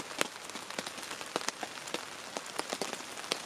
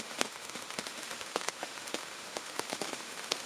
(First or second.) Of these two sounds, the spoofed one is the second